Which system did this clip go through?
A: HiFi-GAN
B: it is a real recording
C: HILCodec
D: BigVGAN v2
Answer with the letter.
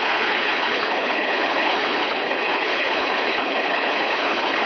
C